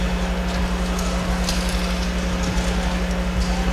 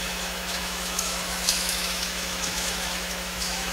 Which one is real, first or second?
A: first